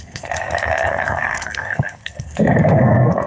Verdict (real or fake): fake